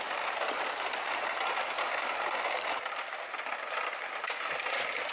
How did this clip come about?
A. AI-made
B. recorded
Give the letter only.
B